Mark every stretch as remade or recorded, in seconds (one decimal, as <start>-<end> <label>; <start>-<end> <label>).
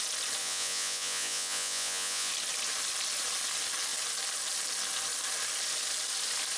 0.0-0.4 recorded; 0.4-2.3 remade; 2.3-6.6 recorded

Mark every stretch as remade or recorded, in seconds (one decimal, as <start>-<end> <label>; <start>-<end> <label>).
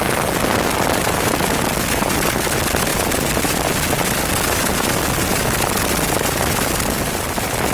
0.0-7.7 recorded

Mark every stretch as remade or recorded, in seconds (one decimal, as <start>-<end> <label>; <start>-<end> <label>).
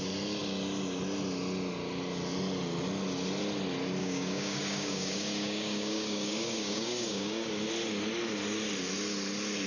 0.0-4.0 recorded; 4.0-7.5 remade; 7.5-9.7 recorded